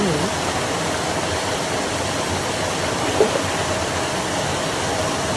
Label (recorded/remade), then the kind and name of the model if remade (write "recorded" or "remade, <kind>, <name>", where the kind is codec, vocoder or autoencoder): recorded